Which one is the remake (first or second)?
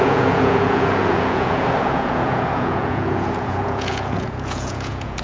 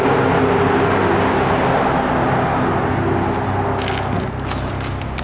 first